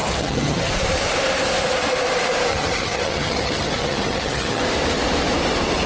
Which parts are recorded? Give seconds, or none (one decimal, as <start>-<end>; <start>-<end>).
0.7-2.5; 4.6-5.9